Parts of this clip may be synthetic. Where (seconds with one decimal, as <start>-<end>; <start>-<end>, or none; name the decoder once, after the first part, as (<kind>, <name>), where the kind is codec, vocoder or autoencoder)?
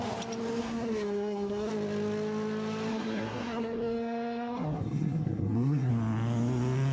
0.6-1.7 (codec, SNAC); 2.9-5.9